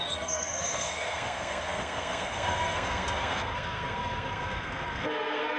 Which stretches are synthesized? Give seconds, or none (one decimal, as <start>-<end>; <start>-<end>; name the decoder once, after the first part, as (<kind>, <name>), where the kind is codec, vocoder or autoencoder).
0.0-5.6 (codec, SNAC)